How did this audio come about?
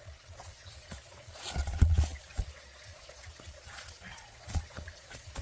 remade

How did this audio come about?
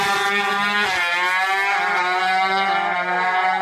recorded